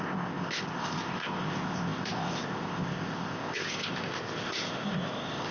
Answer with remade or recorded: remade